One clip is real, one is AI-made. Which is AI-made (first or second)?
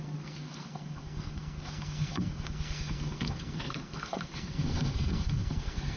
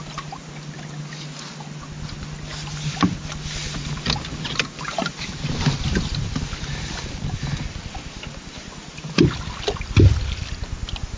first